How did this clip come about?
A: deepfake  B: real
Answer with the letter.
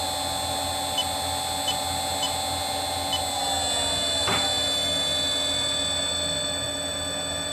B